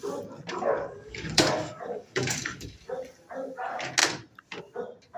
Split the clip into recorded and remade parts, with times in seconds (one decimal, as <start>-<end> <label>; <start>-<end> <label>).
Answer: 0.0-0.5 recorded; 0.5-2.8 remade; 2.8-5.2 recorded